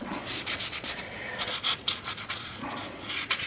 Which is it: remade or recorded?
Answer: remade